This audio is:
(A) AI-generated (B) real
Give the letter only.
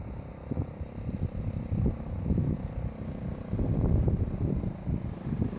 B